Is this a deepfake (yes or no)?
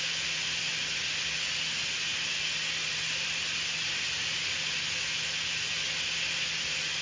no